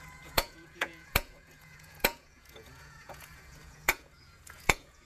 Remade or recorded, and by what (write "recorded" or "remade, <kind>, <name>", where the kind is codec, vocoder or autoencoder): remade, vocoder, Vocos